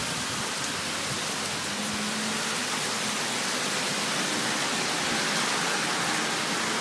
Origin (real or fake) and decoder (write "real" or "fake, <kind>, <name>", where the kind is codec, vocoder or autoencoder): real